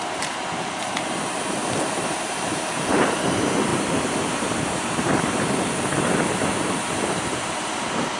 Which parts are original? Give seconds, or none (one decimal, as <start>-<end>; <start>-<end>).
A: 1.6-2.2; 3.7-4.3